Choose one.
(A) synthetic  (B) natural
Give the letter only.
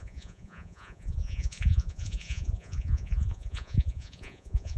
A